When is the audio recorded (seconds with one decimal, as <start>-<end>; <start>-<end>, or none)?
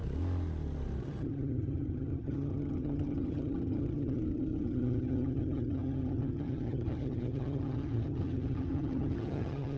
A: 0.0-1.0